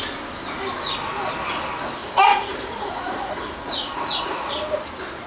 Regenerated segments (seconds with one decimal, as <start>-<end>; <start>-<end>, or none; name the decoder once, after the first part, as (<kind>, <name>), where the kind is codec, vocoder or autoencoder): 2.0-4.5 (vocoder, Vocos)